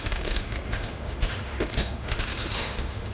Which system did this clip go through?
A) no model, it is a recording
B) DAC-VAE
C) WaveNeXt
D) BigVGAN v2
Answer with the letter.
B